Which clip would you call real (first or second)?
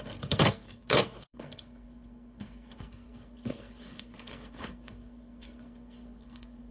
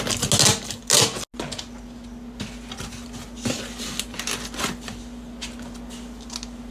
second